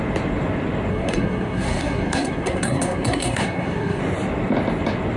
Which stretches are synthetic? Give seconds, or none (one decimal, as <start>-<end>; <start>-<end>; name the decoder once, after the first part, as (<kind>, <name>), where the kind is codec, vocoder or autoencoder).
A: 0.9-4.0 (codec, SNAC)

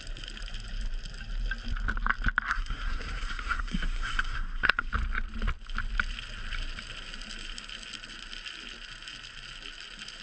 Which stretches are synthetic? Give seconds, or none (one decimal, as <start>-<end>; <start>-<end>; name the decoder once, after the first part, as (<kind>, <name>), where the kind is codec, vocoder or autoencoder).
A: 2.5-4.9 (codec, SNAC)

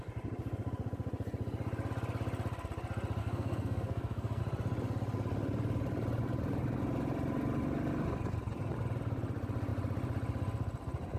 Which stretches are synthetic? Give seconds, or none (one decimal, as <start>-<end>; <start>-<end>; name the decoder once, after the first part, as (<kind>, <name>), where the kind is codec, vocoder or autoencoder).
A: 3.2-4.4 (codec, SNAC)

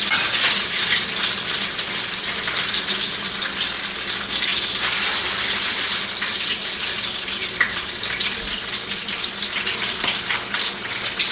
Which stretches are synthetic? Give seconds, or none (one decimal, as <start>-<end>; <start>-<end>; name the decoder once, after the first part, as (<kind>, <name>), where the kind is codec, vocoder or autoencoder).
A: none

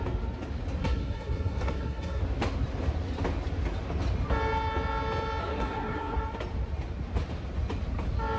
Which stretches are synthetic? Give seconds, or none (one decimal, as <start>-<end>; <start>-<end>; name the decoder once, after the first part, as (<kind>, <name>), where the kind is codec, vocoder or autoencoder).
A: 0.8-2.2 (codec, SNAC); 5.4-6.2